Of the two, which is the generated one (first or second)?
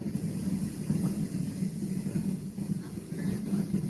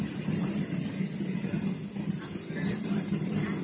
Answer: first